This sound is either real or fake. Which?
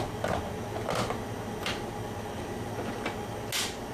real